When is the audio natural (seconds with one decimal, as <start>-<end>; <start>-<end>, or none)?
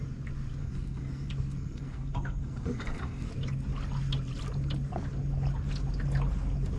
0.0-0.6; 3.3-6.8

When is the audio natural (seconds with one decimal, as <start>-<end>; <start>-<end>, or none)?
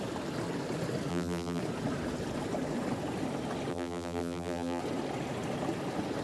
0.0-1.1; 1.6-3.7; 4.8-6.2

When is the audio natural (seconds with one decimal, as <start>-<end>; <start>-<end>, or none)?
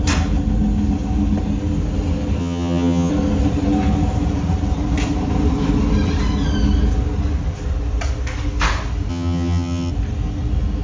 0.0-2.4; 3.1-9.1; 9.9-10.8